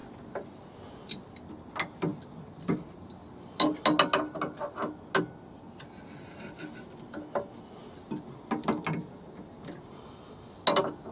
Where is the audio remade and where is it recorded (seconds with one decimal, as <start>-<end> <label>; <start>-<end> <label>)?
0.0-11.1 recorded